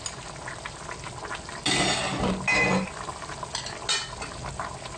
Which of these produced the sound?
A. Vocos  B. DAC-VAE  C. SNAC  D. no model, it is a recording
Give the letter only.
D